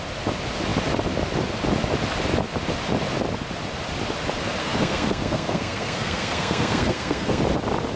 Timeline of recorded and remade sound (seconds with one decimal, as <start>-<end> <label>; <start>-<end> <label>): 0.0-4.6 recorded; 4.6-7.4 remade; 7.4-8.0 recorded